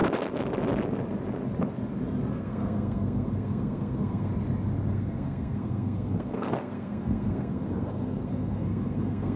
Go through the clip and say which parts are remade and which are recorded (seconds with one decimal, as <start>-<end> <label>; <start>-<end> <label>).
0.0-2.3 recorded; 2.3-4.3 remade; 4.3-4.9 recorded; 4.9-9.4 remade